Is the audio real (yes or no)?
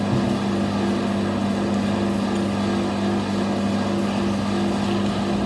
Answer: yes